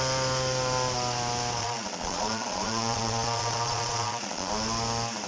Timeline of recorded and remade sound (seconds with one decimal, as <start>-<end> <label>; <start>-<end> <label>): 0.0-1.6 recorded; 1.6-4.5 remade; 4.5-5.3 recorded